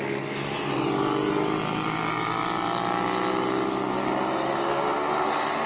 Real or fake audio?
real